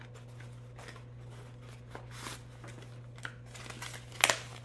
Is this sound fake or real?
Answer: real